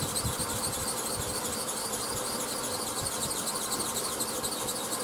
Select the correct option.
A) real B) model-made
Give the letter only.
A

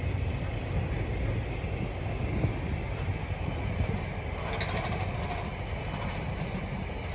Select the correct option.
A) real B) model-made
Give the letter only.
A